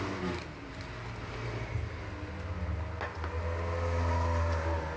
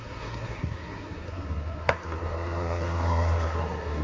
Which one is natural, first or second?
first